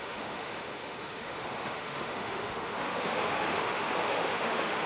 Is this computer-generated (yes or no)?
yes